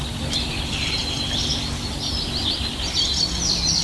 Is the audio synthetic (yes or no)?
yes